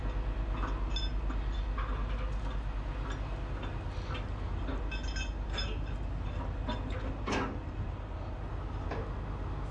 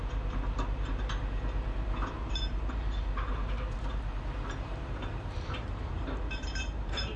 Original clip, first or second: first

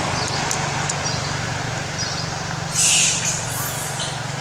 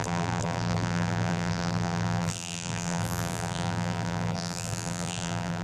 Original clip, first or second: first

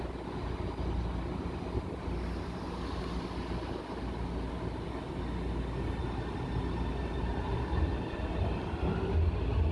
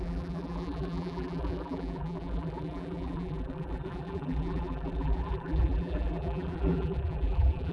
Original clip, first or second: first